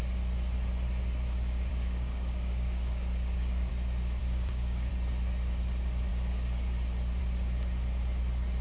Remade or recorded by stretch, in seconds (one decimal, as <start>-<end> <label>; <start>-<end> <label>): 0.0-1.7 recorded; 1.7-3.7 remade; 3.7-4.2 recorded; 4.2-4.9 remade; 4.9-8.6 recorded